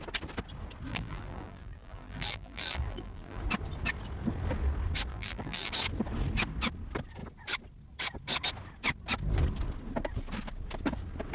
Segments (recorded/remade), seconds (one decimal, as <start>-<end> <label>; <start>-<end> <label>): 0.0-0.9 recorded; 0.9-3.4 remade; 3.4-5.1 recorded; 5.1-5.7 remade; 5.7-11.3 recorded